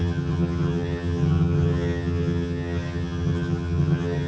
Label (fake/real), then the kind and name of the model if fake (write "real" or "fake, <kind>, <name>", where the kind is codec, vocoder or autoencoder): fake, vocoder, HiFi-GAN